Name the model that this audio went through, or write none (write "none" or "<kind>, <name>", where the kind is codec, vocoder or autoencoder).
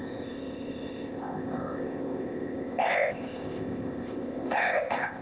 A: codec, ZipCodec